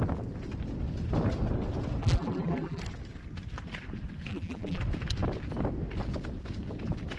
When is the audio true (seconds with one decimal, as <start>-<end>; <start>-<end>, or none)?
0.0-2.0; 2.8-4.3; 4.8-7.2